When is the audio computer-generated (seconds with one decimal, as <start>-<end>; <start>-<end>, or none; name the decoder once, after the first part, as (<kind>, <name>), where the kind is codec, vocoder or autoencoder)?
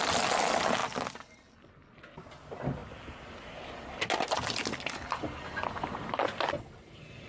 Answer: none